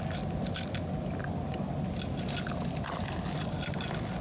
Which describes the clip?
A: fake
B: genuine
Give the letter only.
B